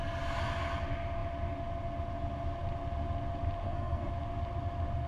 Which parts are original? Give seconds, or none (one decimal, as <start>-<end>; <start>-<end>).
0.0-3.6; 4.1-5.1